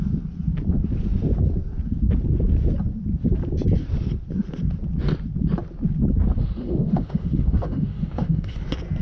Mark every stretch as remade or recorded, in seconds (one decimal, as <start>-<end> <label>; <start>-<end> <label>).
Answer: 0.0-6.4 recorded; 6.4-8.6 remade; 8.6-9.0 recorded